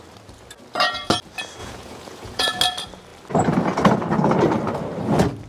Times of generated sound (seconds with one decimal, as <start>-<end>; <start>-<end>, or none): 1.6-2.6